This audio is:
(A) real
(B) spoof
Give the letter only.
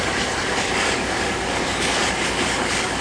B